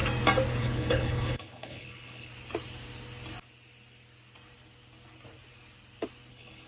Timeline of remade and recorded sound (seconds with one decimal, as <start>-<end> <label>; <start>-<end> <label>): 0.0-0.6 recorded; 0.6-2.3 remade; 2.3-6.3 recorded; 6.3-6.7 remade